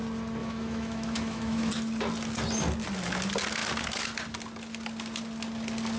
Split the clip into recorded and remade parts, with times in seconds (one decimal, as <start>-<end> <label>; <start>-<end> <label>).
0.0-0.4 recorded; 0.4-1.7 remade; 1.7-6.0 recorded